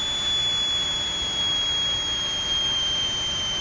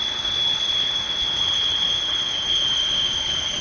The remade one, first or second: second